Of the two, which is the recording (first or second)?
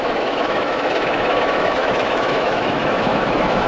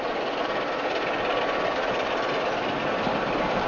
second